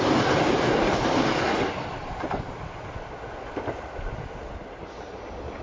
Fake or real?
real